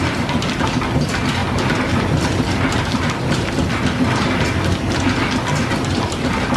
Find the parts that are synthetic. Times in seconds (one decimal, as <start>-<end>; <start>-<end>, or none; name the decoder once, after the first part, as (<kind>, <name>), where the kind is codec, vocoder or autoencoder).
none